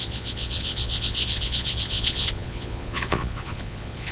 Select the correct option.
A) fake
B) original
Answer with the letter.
A